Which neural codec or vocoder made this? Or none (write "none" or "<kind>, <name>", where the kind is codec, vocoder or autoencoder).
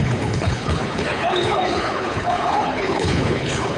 codec, HILCodec